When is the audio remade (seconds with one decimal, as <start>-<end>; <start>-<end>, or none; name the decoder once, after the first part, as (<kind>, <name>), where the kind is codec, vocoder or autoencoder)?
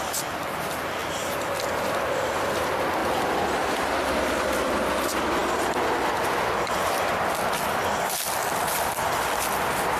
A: none